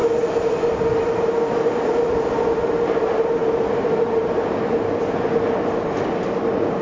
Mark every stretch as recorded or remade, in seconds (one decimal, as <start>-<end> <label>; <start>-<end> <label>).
0.0-6.8 recorded